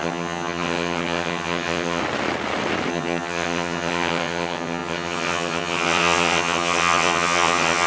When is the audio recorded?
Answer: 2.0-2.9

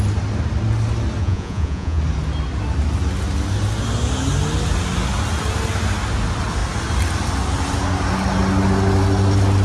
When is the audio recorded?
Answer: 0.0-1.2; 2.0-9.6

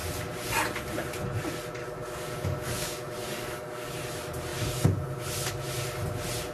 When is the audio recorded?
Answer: 0.0-1.8; 3.9-6.5

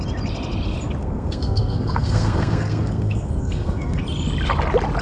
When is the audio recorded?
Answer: 0.0-1.0; 4.0-5.0

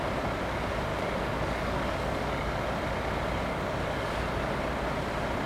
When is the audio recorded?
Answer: 0.0-0.9; 2.6-3.5; 4.1-5.5